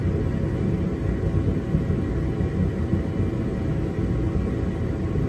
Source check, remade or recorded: recorded